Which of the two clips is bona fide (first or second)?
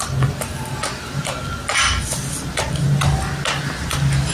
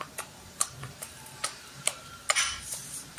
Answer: first